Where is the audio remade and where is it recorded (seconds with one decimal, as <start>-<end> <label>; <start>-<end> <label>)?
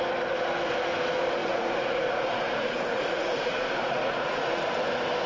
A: 0.0-1.4 recorded; 1.4-4.6 remade; 4.6-5.3 recorded